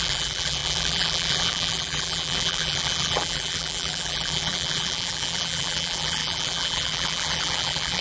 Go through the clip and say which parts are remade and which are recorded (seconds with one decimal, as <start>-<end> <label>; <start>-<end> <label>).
0.0-8.0 remade